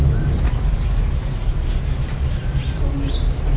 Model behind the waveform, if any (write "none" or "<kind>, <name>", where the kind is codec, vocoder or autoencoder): none